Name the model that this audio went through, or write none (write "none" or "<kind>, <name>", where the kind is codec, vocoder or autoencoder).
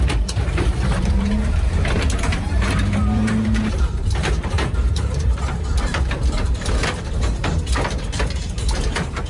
vocoder, BigVGAN v2